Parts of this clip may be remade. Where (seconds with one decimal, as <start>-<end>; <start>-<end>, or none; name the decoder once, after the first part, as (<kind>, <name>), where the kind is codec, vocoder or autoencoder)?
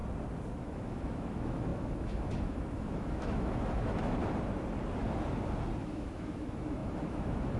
0.6-4.2 (autoencoder, DAC-VAE); 5.8-7.6